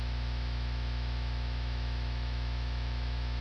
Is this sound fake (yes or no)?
yes